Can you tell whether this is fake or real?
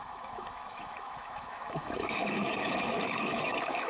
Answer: fake